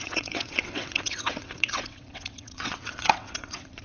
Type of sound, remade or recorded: remade